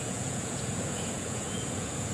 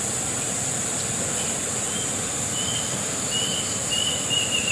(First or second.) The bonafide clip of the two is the second